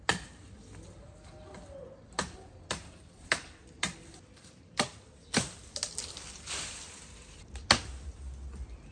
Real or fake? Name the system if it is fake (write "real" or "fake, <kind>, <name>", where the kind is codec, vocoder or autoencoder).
real